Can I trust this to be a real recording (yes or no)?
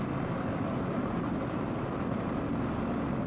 yes